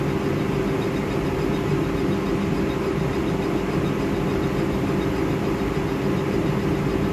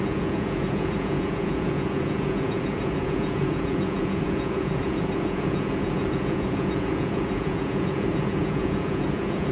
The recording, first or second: first